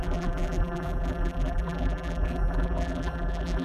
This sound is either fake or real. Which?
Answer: fake